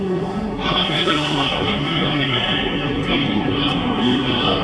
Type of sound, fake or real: fake